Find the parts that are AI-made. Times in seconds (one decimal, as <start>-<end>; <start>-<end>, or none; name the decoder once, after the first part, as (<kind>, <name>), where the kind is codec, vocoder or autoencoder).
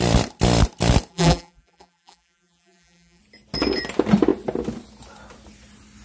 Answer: 1.1-3.2 (vocoder, BigVGAN v2)